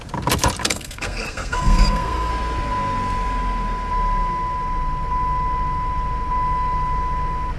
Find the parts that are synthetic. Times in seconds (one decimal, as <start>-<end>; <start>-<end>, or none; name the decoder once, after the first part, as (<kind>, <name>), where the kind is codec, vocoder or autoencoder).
0.6-2.3 (codec, SNAC)